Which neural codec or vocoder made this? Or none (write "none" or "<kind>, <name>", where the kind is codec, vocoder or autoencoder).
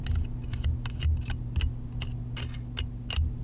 none